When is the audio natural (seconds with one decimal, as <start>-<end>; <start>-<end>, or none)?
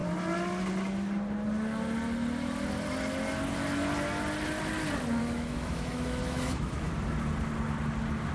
0.0-5.2; 6.9-8.3